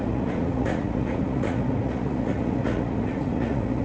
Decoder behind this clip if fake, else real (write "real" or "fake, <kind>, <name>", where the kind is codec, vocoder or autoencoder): fake, vocoder, Vocos